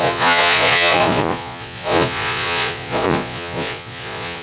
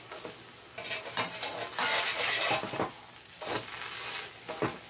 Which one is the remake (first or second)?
first